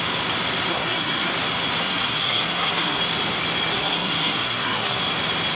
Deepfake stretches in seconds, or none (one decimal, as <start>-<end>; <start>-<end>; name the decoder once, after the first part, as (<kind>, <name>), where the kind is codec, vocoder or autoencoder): 0.7-1.3 (codec, SNAC); 1.8-3.0; 3.7-5.0